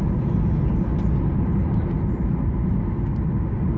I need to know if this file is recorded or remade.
recorded